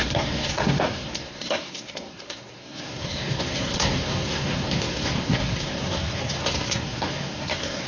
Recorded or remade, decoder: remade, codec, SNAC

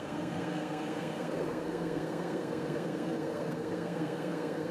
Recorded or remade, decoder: remade, codec, SNAC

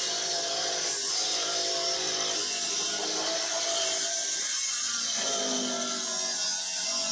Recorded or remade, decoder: recorded